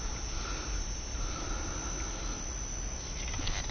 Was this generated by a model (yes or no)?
no